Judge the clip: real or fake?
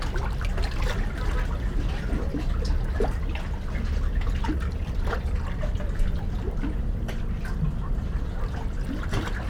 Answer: real